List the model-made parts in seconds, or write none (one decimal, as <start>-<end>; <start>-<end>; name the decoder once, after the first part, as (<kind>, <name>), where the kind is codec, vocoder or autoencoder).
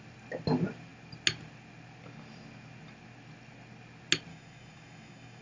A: 4.3-5.4 (autoencoder, DAC-VAE)